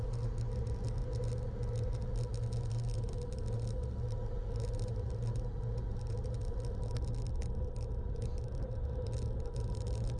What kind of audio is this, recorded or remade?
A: recorded